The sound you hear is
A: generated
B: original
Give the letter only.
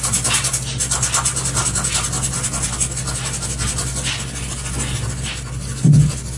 B